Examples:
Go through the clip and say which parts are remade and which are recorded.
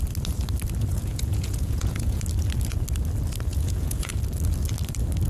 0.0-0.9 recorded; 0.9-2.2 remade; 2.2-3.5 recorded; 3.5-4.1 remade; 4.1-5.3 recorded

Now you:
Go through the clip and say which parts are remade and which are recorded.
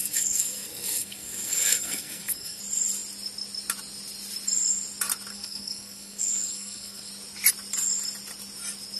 0.0-2.6 remade; 2.6-5.3 recorded; 5.3-7.1 remade; 7.1-9.0 recorded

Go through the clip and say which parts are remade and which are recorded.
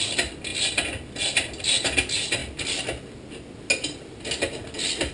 0.0-5.1 recorded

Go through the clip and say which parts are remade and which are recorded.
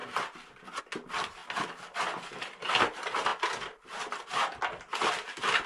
0.0-5.7 recorded